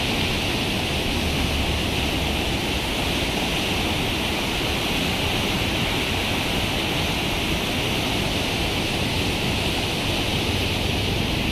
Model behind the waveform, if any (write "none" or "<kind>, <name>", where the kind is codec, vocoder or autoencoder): none